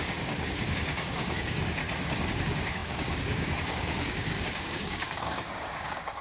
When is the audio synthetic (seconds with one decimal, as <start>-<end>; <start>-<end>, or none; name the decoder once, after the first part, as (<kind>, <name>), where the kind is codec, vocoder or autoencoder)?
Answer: 0.0-1.8 (codec, DAC); 2.4-6.2